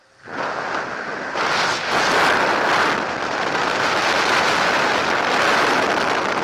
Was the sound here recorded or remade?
recorded